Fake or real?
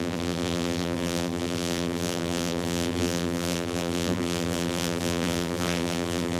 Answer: fake